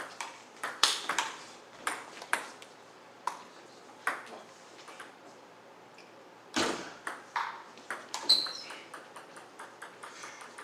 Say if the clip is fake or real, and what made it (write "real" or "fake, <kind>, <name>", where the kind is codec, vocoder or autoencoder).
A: fake, vocoder, BigVGAN v2